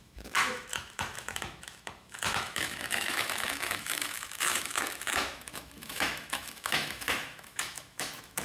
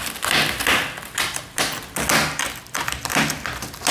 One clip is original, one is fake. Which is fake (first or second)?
first